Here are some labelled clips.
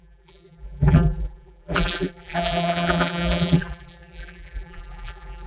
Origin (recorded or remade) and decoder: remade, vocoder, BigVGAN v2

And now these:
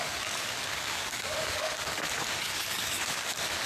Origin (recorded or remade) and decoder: remade, codec, DAC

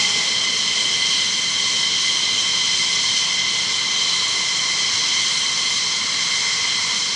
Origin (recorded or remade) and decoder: recorded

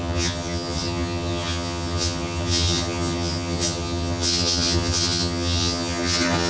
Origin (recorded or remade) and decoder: remade, vocoder, HiFi-GAN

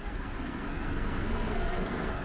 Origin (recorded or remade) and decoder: remade, codec, SNAC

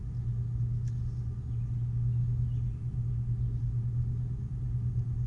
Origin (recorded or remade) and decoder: recorded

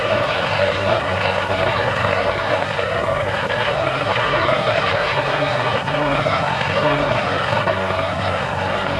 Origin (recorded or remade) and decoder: remade, codec, SNAC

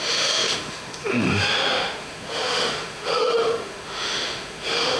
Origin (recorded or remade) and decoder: remade, autoencoder, DAC-VAE